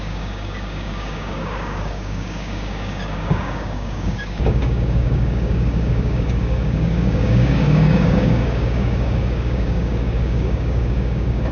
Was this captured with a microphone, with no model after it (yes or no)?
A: no